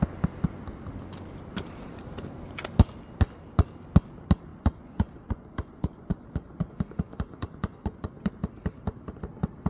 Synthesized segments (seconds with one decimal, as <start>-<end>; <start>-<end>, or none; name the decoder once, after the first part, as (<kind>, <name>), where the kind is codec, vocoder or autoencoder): 4.5-8.3 (vocoder, Vocos)